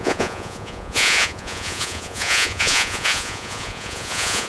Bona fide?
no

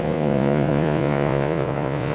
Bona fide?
no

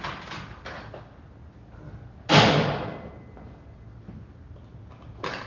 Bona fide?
yes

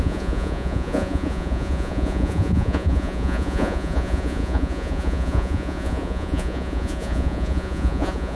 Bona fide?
no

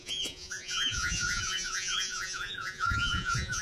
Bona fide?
no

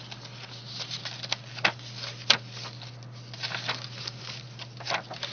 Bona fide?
yes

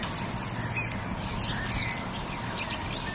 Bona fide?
yes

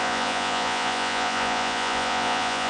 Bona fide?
no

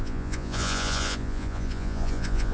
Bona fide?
no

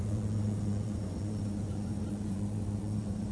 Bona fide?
no